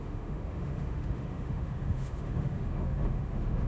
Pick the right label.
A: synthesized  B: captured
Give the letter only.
A